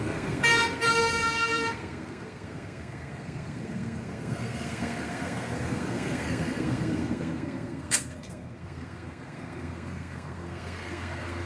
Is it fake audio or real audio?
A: fake